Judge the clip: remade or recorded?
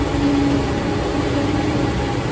recorded